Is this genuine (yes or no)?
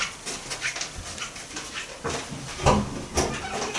yes